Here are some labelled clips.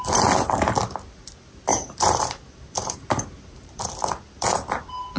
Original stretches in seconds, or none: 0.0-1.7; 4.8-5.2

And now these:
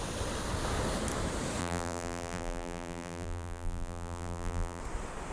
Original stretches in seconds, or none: 0.0-1.6; 4.8-5.3

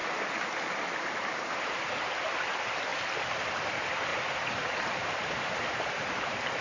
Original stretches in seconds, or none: 0.0-0.9; 2.9-3.6

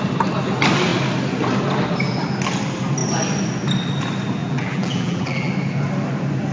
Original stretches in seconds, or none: 0.0-4.4; 5.5-6.5

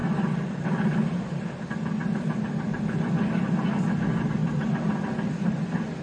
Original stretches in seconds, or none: 0.0-6.0

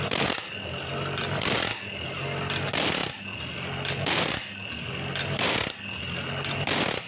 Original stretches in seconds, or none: 0.0-7.1